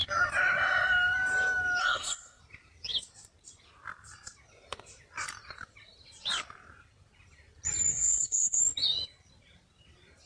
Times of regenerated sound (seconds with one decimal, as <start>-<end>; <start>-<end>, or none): 1.8-2.4; 7.9-8.6